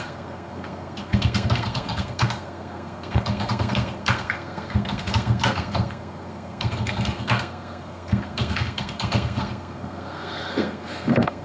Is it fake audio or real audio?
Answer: fake